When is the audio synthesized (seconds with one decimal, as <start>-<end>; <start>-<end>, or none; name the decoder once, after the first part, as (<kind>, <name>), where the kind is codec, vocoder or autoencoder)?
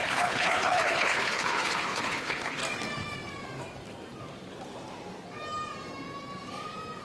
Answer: 0.0-2.6 (codec, HILCodec)